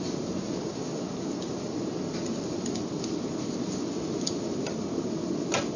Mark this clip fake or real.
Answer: real